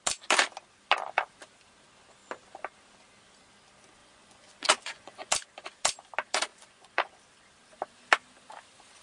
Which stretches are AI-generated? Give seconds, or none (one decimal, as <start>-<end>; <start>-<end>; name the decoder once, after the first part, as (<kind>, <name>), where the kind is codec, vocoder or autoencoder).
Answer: 4.0-5.3 (vocoder, Vocos); 6.5-7.1